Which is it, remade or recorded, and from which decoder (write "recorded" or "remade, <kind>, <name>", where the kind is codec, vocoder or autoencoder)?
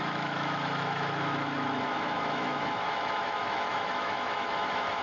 remade, autoencoder, DAC-VAE